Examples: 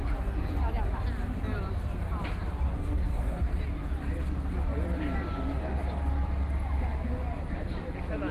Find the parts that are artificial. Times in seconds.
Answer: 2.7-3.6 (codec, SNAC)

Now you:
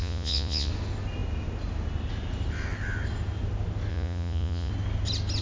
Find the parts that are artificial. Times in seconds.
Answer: 0.0-0.7 (vocoder, Vocos); 3.9-4.7

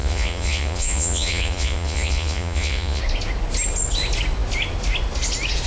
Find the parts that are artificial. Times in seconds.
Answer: 0.0-3.0 (vocoder, Vocos)